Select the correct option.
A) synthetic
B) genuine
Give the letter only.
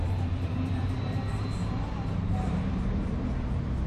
A